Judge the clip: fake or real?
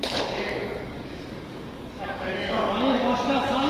fake